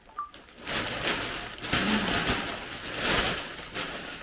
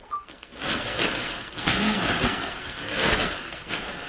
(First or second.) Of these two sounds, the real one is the first